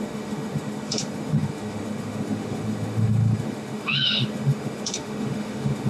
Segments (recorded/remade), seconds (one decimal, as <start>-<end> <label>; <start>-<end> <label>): 0.0-5.9 remade